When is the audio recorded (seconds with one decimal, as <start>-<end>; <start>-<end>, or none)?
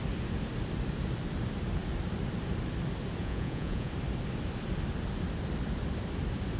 0.0-3.2; 3.9-6.6